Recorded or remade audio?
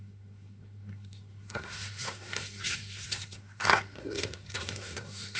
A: remade